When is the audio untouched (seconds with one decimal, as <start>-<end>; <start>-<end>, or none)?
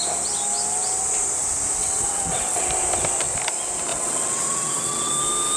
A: 0.0-1.8; 2.6-3.9; 5.1-5.6